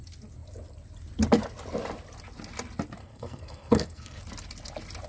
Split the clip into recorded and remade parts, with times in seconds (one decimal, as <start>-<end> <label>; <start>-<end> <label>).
0.0-3.0 recorded; 3.0-4.2 remade; 4.2-5.1 recorded